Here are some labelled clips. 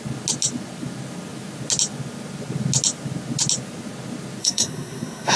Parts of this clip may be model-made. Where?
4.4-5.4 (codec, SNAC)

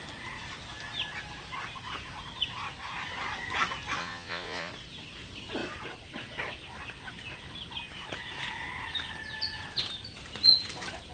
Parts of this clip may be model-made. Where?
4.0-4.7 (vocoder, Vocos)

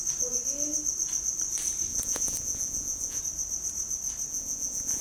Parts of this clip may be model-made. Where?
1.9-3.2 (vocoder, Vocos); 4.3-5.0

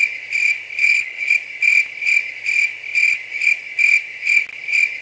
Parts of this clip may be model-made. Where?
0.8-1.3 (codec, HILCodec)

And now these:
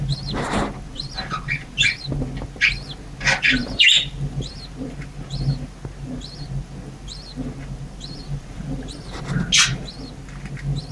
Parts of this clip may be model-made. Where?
3.6-4.5 (vocoder, BigVGAN v2); 8.2-9.0

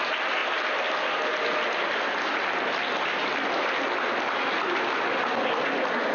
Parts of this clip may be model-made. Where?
none

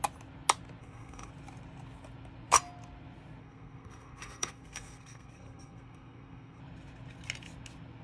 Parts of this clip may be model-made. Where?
0.8-1.3 (codec, SNAC); 3.4-6.6

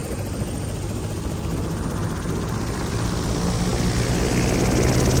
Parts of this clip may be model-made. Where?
none